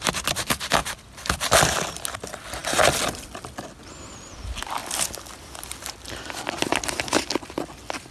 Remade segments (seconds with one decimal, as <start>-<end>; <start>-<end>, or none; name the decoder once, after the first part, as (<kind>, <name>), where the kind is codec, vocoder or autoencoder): none